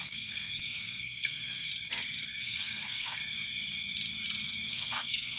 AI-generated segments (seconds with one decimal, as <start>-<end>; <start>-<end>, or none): 0.0-1.7; 2.4-3.2; 4.7-5.4